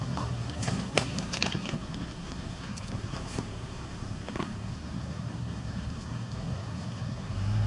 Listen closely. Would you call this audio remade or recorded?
remade